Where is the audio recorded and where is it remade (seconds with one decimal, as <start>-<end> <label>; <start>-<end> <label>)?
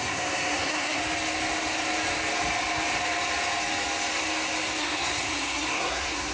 0.0-1.0 remade; 1.0-4.8 recorded; 4.8-6.3 remade